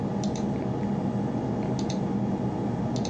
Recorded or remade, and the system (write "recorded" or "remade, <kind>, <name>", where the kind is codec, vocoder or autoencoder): recorded